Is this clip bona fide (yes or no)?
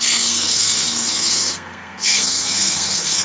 no